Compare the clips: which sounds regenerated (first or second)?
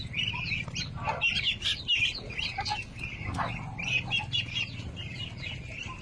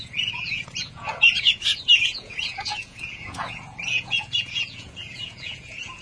second